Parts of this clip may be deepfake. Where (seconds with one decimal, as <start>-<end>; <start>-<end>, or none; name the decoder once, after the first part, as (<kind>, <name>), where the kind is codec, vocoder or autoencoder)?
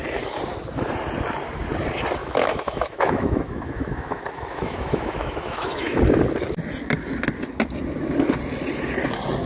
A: 2.2-6.0 (autoencoder, DAC-VAE)